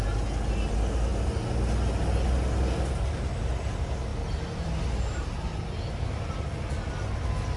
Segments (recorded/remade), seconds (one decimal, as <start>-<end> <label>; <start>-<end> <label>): 0.0-7.6 recorded